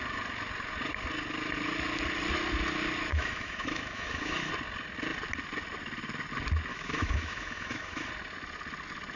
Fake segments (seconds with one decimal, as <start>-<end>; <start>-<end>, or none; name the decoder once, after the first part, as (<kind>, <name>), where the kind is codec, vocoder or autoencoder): 3.1-4.5 (autoencoder, DAC-VAE); 6.7-8.1